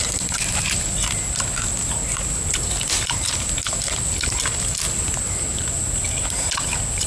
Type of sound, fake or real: real